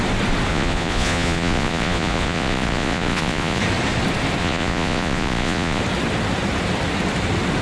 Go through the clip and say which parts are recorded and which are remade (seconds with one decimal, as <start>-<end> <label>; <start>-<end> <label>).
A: 0.0-0.5 recorded; 0.5-3.6 remade; 3.6-4.4 recorded; 4.4-5.8 remade; 5.8-7.6 recorded